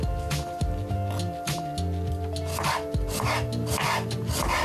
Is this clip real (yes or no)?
yes